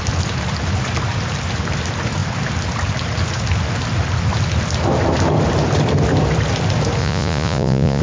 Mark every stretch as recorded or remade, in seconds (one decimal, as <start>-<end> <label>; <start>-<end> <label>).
0.0-7.0 recorded; 7.0-8.0 remade

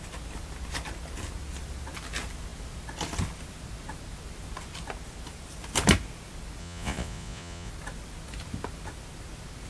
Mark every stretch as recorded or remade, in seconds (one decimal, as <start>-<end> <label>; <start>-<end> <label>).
0.0-6.6 recorded; 6.6-7.7 remade; 7.7-9.7 recorded